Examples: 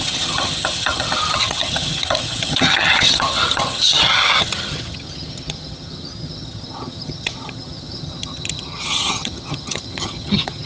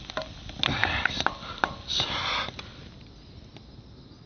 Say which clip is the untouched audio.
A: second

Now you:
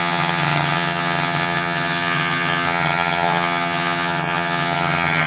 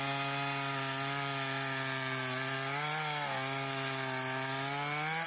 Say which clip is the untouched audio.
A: second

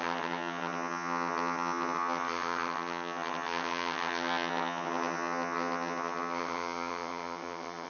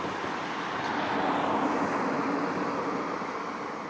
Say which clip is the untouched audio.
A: second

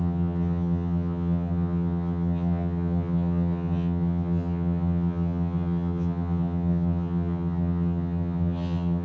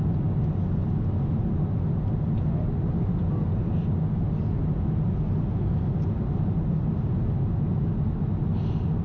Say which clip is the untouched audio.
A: second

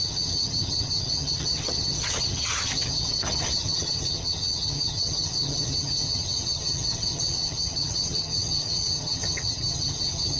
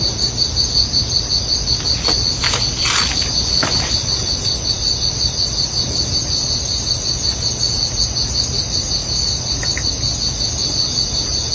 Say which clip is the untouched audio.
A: second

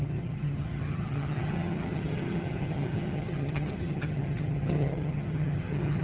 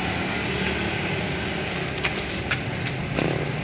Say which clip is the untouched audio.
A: second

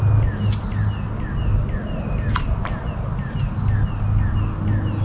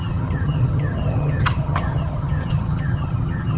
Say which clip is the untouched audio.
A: first